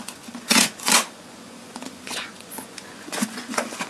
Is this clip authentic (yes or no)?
no